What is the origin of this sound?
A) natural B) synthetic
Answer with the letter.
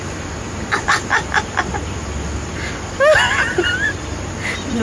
A